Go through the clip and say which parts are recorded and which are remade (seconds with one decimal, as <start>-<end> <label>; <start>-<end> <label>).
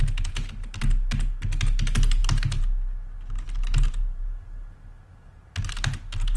0.0-6.4 recorded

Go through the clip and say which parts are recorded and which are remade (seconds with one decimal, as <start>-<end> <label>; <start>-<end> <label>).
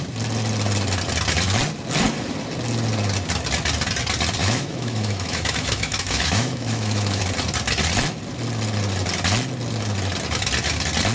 0.0-4.4 recorded; 4.4-7.2 remade; 7.2-11.1 recorded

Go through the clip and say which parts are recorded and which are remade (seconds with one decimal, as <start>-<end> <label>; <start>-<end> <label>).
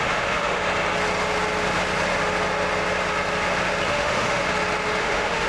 0.0-0.6 remade; 0.6-3.9 recorded; 3.9-4.4 remade; 4.4-5.0 recorded; 5.0-5.5 remade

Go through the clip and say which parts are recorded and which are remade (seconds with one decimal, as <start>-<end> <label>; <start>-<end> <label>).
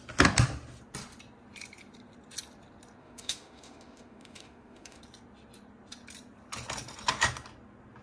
0.0-3.0 recorded; 3.0-5.0 remade; 5.0-8.0 recorded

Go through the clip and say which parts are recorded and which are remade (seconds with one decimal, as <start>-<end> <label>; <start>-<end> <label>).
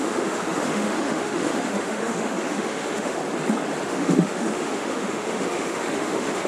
0.0-3.2 remade; 3.2-3.8 recorded; 3.8-6.5 remade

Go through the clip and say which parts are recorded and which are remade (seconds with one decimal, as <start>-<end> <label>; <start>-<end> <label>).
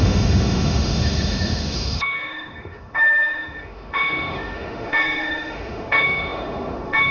0.0-7.1 remade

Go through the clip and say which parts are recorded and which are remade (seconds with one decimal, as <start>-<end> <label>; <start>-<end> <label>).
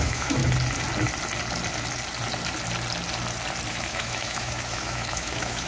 0.0-0.4 remade; 0.4-3.7 recorded; 3.7-5.7 remade